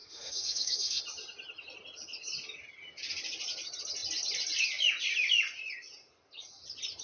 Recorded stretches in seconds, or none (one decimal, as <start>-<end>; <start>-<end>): 1.0-7.0